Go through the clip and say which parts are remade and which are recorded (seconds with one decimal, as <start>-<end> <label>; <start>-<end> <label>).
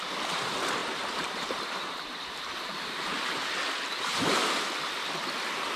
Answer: 0.0-0.8 recorded; 0.8-3.2 remade; 3.2-3.9 recorded; 3.9-4.7 remade; 4.7-5.8 recorded